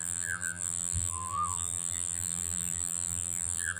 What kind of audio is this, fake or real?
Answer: fake